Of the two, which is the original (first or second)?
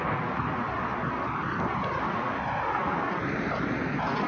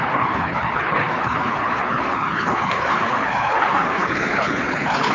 first